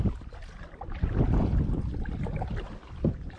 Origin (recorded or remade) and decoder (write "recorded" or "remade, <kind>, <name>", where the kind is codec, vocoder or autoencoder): recorded